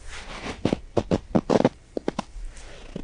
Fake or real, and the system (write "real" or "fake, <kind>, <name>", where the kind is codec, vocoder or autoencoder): real